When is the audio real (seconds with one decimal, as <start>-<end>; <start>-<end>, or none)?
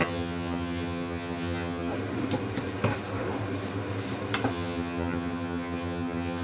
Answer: 1.9-4.5